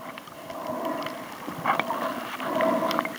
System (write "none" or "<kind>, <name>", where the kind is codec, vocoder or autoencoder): none